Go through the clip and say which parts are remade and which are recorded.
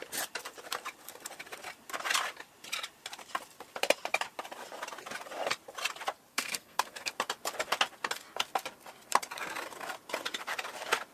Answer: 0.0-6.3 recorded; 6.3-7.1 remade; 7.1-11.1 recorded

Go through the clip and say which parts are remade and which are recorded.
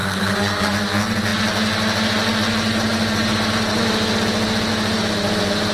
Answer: 0.0-0.7 remade; 0.7-5.7 recorded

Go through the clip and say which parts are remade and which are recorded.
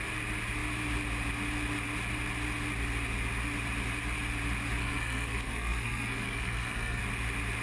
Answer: 0.0-4.8 recorded; 4.8-7.0 remade; 7.0-7.6 recorded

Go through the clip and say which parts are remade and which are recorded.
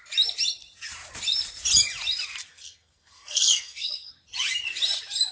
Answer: 0.0-2.5 recorded; 2.5-4.1 remade; 4.1-5.3 recorded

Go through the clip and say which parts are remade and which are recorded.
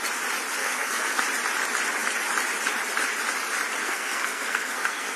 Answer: 0.0-0.6 recorded; 0.6-1.2 remade; 1.2-3.8 recorded; 3.8-5.2 remade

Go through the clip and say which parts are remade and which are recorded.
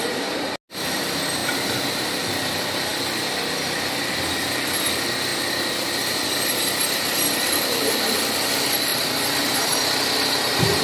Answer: 0.0-10.8 recorded